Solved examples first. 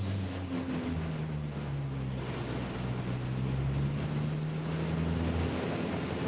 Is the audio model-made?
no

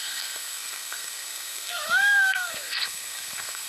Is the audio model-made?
yes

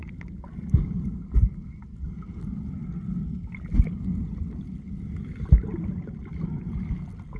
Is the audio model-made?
no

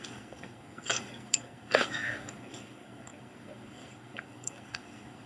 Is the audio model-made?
yes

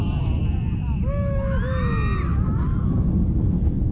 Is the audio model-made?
no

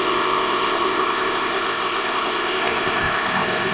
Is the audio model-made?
yes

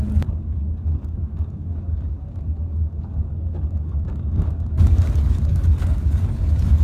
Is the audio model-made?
yes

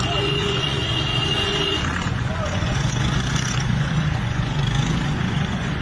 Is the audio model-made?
yes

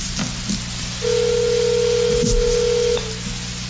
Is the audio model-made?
no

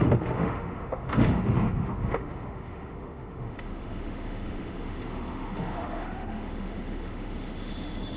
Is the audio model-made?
yes